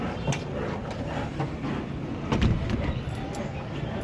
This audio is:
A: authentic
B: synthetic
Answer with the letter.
A